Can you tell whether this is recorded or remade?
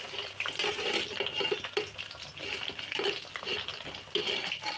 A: recorded